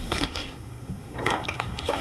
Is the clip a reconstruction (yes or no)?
yes